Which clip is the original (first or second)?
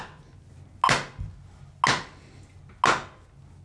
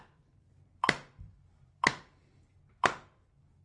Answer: first